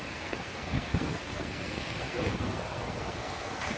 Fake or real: fake